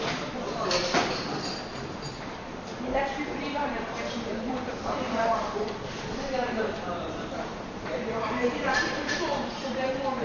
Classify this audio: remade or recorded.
remade